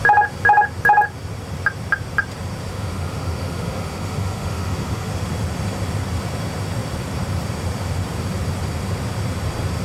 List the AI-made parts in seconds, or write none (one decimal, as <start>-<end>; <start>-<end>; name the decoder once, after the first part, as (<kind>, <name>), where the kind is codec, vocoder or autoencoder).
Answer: 2.7-5.1 (autoencoder, DAC-VAE)